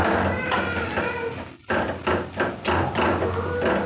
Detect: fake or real real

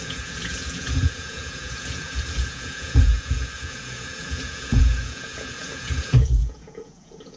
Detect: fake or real fake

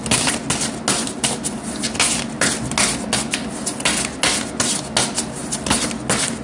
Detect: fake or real real